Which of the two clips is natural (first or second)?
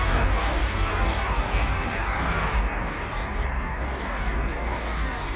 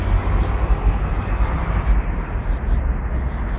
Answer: second